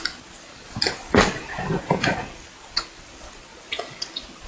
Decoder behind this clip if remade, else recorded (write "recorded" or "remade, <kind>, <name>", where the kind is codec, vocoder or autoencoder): recorded